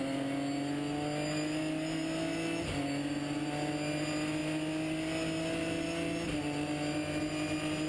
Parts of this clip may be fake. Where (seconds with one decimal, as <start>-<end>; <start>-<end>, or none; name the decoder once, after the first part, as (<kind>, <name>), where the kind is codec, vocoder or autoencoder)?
none